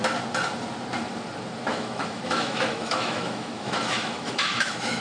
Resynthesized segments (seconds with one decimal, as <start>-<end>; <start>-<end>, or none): 1.7-5.0